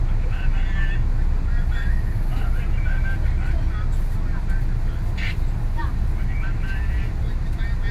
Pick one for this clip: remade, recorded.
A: recorded